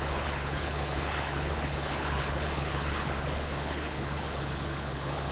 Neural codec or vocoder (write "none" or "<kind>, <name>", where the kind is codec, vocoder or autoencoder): codec, HILCodec